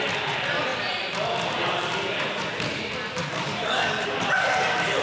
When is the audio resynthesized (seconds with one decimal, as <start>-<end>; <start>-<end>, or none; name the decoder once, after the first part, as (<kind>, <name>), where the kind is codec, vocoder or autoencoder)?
3.2-4.3 (codec, DAC)